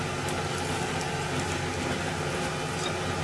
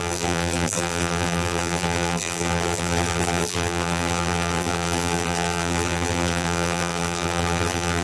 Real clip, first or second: first